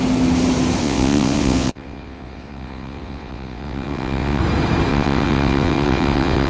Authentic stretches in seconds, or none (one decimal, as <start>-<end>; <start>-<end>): 0.0-0.8; 4.4-4.9